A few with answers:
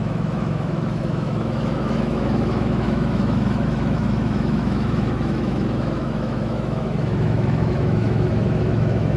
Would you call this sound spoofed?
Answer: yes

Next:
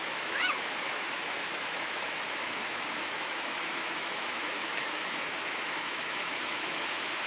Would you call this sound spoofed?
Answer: yes